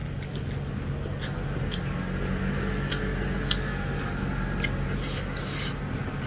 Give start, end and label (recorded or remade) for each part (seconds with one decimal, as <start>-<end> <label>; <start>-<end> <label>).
0.0-6.3 recorded